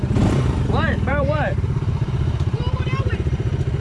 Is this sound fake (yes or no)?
yes